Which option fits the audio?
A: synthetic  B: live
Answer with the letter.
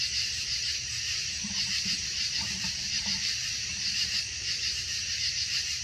A